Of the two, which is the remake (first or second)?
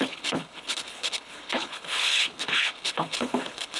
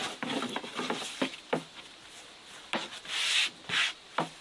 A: first